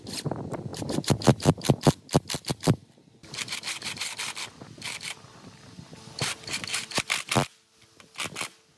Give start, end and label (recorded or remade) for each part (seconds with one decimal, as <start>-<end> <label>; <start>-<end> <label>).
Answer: 0.0-8.8 recorded